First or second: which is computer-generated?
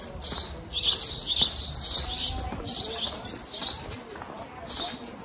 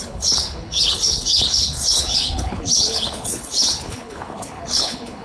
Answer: second